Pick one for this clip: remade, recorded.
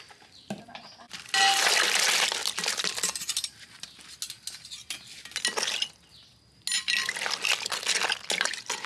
recorded